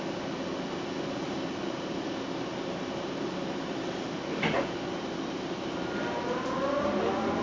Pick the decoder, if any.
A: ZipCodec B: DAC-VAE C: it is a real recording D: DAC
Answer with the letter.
C